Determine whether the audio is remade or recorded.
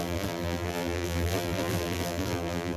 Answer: remade